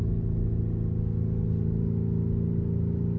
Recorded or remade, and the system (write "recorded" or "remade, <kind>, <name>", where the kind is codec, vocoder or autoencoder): recorded